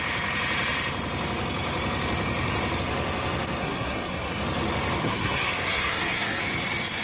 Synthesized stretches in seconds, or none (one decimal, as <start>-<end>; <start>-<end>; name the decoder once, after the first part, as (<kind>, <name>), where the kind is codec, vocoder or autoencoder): 3.6-4.4 (codec, SNAC); 5.0-6.4